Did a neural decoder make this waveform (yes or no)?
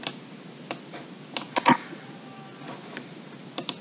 no